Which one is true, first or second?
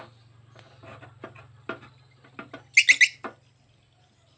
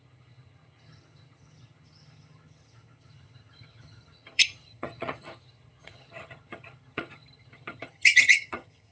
first